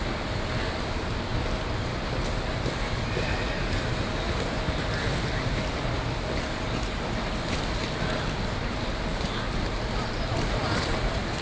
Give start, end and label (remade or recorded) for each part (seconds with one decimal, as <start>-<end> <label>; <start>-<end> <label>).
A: 0.0-11.4 recorded